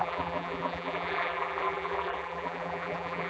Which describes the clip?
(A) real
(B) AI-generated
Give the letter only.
B